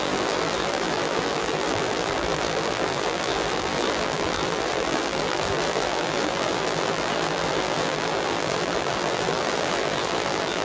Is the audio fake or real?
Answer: fake